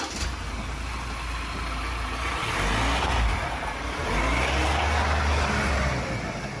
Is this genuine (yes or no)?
yes